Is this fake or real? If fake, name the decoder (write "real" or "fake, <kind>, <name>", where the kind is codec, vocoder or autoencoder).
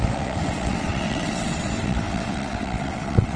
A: fake, vocoder, WaveNeXt